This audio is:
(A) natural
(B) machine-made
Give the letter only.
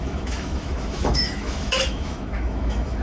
B